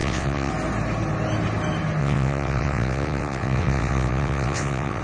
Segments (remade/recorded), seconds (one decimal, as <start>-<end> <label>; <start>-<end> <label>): 0.0-0.5 remade; 0.5-2.0 recorded; 2.0-5.0 remade